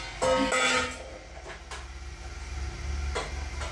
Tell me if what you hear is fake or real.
real